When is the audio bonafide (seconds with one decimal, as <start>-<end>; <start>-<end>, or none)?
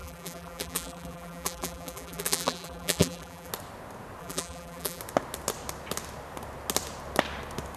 3.5-4.2; 5.0-7.8